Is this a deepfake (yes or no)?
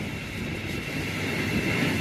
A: no